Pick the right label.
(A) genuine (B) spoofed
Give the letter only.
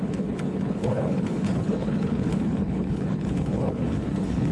B